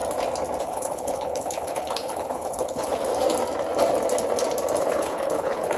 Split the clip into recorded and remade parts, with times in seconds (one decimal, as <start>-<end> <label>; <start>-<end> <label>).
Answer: 0.0-0.6 recorded; 0.6-3.1 remade; 3.1-4.8 recorded; 4.8-5.8 remade

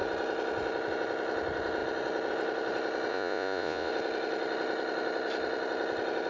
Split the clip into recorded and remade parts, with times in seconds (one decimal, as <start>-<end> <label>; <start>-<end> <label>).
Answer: 0.0-3.1 recorded; 3.1-3.9 remade; 3.9-6.3 recorded

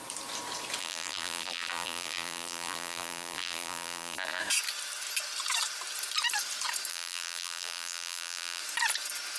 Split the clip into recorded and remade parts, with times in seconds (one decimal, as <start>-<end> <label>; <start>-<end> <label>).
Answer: 0.0-0.8 recorded; 0.8-4.4 remade; 4.4-6.9 recorded; 6.9-8.6 remade; 8.6-9.4 recorded

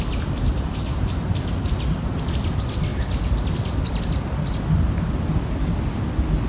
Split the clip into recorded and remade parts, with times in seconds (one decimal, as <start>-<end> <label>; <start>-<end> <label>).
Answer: 0.0-6.5 recorded

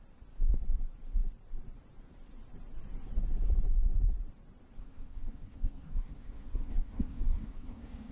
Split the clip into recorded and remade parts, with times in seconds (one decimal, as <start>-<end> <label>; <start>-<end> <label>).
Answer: 0.0-4.8 recorded; 4.8-8.1 remade

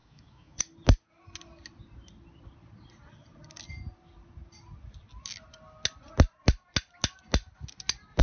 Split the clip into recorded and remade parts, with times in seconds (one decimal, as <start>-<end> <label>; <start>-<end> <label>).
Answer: 0.0-0.6 remade; 0.6-8.2 recorded

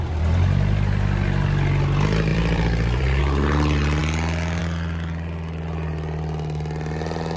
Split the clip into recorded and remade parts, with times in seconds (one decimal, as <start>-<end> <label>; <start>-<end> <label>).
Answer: 0.0-2.3 recorded; 2.3-3.2 remade; 3.2-7.4 recorded

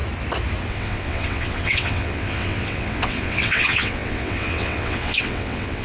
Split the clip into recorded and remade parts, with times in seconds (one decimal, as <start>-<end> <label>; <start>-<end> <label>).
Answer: 0.0-0.7 recorded; 0.7-5.8 remade